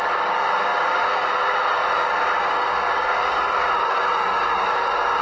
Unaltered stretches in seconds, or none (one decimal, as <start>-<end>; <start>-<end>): none